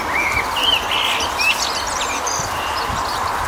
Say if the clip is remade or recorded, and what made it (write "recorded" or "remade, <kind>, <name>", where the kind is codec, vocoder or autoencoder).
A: recorded